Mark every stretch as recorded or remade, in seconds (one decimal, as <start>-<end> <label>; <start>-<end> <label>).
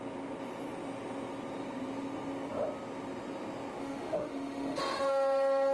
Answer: 0.0-3.8 recorded; 3.8-4.8 remade; 4.8-5.7 recorded